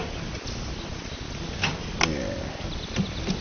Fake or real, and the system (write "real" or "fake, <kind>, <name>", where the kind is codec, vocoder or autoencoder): real